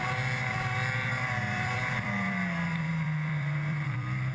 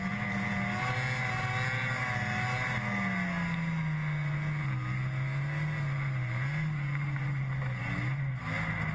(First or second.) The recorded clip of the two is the second